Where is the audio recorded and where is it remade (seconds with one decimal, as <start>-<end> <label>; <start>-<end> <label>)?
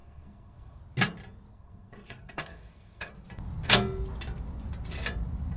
0.0-0.8 remade; 0.8-1.5 recorded; 1.5-3.1 remade; 3.1-5.6 recorded